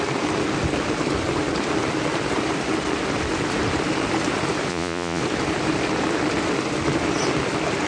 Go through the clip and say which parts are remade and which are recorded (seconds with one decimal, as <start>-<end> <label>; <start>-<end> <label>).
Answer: 0.0-4.7 recorded; 4.7-5.2 remade; 5.2-7.9 recorded